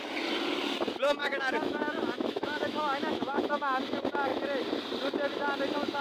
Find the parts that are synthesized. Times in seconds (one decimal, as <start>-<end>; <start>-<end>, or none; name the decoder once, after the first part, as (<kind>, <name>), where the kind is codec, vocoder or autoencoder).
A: 1.2-3.8 (autoencoder, DAC-VAE)